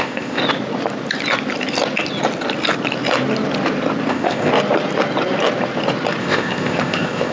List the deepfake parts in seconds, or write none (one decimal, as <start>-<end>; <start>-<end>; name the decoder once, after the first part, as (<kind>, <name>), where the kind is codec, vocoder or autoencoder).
0.0-0.4 (codec, ZipCodec); 4.1-4.5; 6.2-7.3